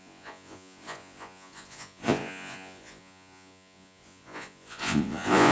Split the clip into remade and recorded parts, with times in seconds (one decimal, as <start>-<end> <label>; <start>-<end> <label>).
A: 0.0-5.5 remade